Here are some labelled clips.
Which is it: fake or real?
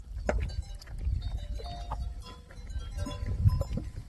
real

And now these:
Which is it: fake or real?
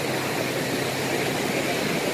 real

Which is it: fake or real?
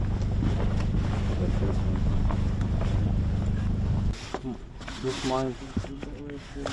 real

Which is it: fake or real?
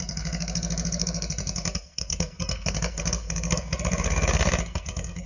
fake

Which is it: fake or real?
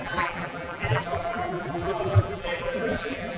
fake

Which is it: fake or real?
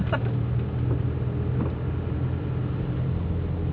real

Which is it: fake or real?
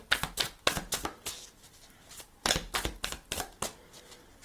real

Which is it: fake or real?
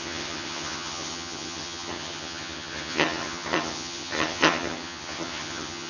fake